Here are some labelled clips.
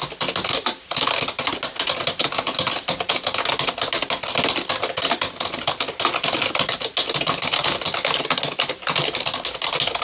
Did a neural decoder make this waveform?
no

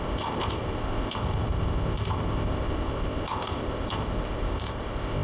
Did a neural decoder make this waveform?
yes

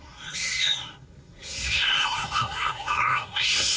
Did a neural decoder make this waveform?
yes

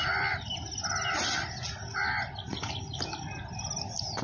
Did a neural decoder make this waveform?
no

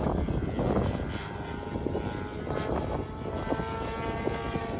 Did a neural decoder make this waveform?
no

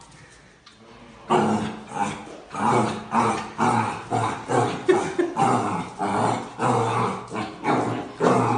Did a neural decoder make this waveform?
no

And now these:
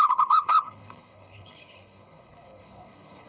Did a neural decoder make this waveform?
yes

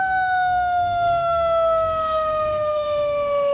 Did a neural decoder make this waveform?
yes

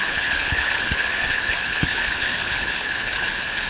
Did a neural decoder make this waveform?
yes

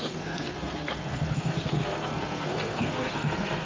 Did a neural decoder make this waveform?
yes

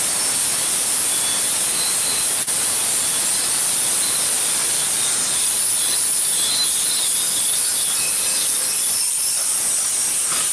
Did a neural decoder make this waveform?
yes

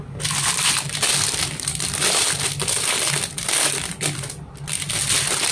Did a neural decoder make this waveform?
no